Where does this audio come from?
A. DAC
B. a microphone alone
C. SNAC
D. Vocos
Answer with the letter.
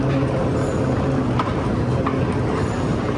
B